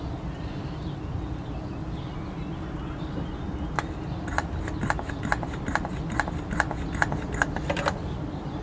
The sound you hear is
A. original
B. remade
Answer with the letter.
A